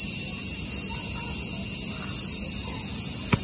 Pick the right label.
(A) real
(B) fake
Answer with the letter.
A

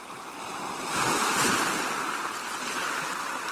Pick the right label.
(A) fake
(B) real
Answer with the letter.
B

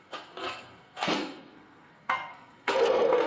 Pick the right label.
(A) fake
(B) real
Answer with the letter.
A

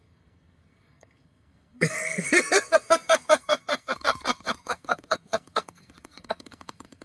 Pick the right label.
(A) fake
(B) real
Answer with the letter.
A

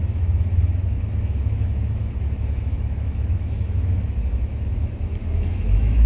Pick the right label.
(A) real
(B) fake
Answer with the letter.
B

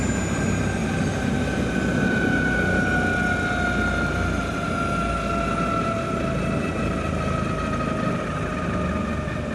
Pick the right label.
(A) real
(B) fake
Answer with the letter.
A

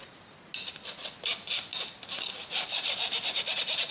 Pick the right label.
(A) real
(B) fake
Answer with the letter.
A